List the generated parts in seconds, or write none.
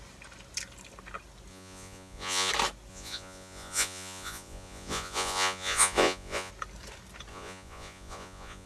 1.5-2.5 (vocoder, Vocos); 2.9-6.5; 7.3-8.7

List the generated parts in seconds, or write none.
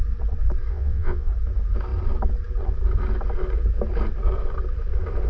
0.7-1.3 (vocoder, WaveNeXt)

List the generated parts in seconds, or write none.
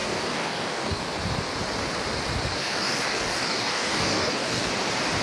0.0-1.0 (codec, DAC); 2.6-4.7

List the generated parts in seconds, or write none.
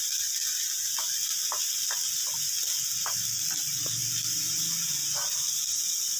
none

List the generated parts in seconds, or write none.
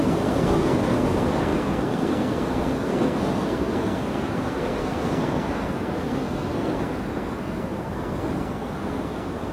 0.0-9.5 (codec, SNAC)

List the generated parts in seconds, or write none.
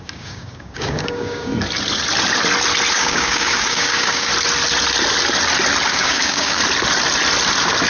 0.0-1.5 (codec, DAC); 2.9-4.3; 5.9-6.6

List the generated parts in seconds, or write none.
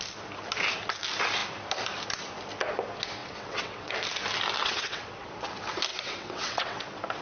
3.2-3.9 (vocoder, WaveNeXt); 4.6-5.3; 5.9-6.8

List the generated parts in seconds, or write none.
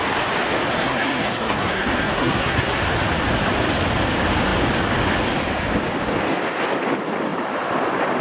0.7-2.8 (codec, SNAC)